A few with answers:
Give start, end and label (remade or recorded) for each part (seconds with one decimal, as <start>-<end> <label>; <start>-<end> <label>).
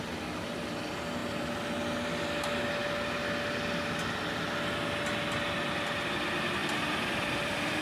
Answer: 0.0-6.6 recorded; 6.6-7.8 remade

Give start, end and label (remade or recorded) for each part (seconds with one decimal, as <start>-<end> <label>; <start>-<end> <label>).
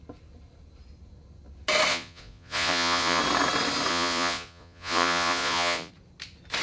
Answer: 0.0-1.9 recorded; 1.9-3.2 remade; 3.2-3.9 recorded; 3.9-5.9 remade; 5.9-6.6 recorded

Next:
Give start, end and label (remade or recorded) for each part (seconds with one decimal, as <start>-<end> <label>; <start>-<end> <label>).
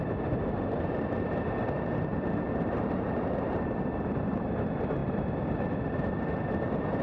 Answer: 0.0-7.0 recorded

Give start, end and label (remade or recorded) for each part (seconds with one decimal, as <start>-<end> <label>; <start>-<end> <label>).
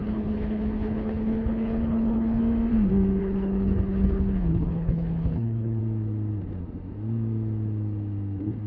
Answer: 0.0-2.4 remade; 2.4-3.2 recorded; 3.2-5.8 remade; 5.8-8.7 recorded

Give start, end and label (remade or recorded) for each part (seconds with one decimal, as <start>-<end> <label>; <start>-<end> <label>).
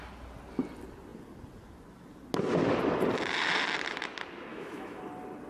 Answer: 0.0-4.5 recorded; 4.5-5.0 remade; 5.0-5.5 recorded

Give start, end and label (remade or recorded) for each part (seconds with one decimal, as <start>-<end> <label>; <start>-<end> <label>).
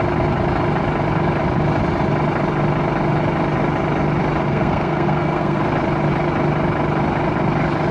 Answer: 0.0-4.5 recorded; 4.5-5.7 remade; 5.7-7.9 recorded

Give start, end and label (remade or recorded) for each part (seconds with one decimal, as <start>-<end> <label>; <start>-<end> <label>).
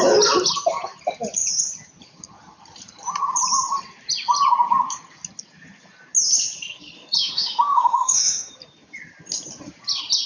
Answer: 0.0-7.2 recorded; 7.2-8.5 remade; 8.5-10.3 recorded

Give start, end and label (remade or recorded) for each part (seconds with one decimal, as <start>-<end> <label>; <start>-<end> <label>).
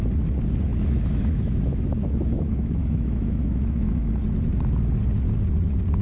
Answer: 0.0-0.7 recorded; 0.7-4.1 remade; 4.1-6.0 recorded